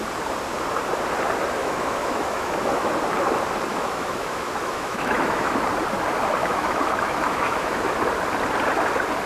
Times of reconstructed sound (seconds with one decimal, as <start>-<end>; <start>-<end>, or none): 1.6-2.9; 3.7-5.6; 6.4-8.0